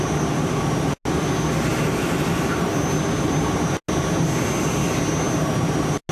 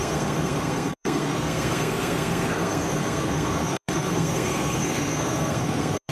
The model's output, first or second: second